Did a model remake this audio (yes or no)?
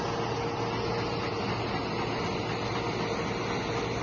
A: no